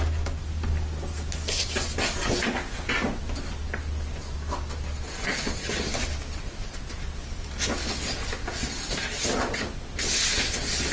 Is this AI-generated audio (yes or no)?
no